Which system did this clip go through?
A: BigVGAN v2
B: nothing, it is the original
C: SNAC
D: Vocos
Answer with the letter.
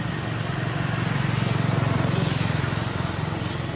B